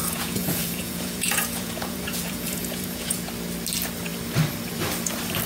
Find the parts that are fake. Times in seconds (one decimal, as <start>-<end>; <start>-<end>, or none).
0.0-3.3